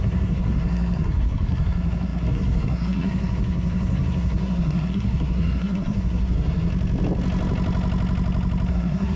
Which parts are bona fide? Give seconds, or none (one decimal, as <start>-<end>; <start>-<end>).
6.7-8.7